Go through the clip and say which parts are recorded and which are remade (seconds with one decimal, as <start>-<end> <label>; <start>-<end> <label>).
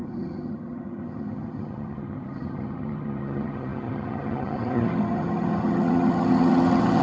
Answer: 0.0-7.0 remade